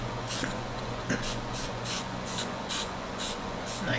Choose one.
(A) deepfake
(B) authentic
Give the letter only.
A